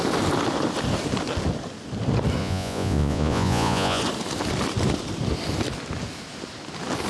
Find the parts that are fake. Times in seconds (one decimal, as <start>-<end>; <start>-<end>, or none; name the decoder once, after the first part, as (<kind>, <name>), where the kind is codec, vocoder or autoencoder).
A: 2.4-4.0 (vocoder, Vocos)